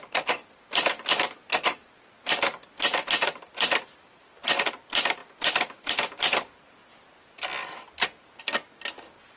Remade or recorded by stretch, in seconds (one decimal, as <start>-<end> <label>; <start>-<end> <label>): 0.0-0.4 recorded; 0.4-4.3 remade; 4.3-9.4 recorded